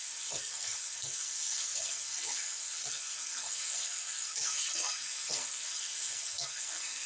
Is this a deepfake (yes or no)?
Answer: yes